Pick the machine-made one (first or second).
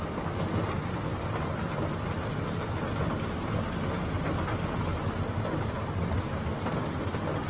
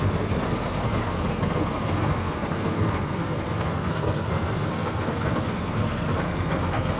second